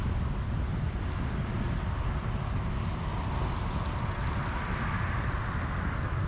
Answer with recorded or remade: recorded